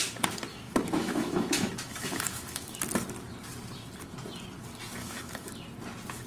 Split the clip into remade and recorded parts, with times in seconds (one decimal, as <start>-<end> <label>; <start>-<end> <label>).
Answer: 0.0-0.5 recorded; 0.5-2.8 remade; 2.8-5.0 recorded; 5.0-5.5 remade; 5.5-6.3 recorded